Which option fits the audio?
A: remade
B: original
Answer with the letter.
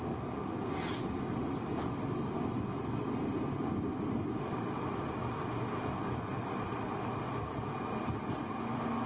B